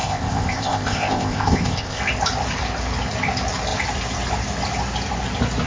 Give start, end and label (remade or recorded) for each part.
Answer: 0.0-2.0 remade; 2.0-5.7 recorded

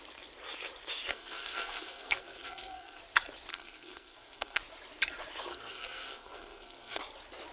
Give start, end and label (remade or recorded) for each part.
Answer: 0.0-1.1 recorded; 1.1-3.0 remade; 3.0-3.5 recorded; 3.5-4.6 remade; 4.6-5.5 recorded; 5.5-7.0 remade; 7.0-7.5 recorded

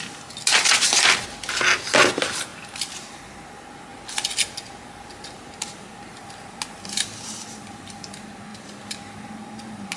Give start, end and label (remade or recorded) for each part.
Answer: 0.0-10.0 recorded